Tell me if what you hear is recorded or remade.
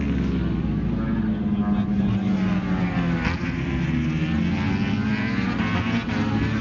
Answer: recorded